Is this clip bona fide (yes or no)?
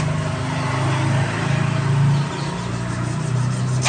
yes